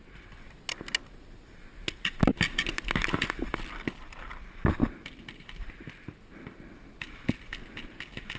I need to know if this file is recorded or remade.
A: recorded